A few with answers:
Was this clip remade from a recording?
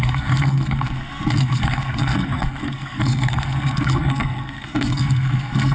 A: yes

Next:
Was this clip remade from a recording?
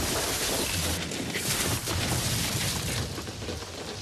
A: no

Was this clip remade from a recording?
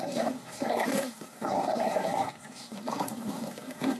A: yes